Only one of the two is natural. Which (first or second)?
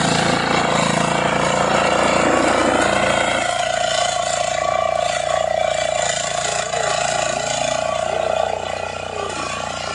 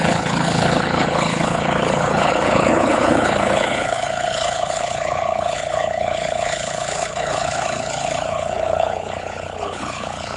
first